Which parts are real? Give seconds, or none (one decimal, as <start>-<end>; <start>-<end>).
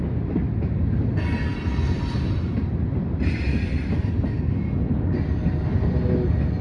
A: 0.0-6.6